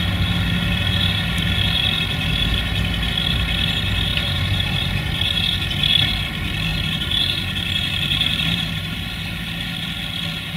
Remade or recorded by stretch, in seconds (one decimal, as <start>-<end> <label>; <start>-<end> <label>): 0.0-4.1 recorded; 4.1-4.9 remade; 4.9-6.7 recorded; 6.7-9.1 remade; 9.1-10.6 recorded